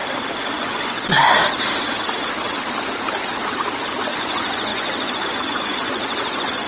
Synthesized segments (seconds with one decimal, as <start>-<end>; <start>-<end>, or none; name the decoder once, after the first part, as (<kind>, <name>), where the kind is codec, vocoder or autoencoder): 0.5-1.2 (vocoder, Vocos); 4.0-6.7